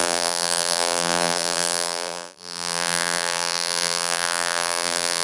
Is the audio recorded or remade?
remade